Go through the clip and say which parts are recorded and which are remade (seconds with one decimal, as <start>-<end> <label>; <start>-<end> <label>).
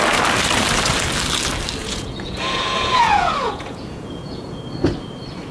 0.0-1.8 recorded; 1.8-4.6 remade; 4.6-5.5 recorded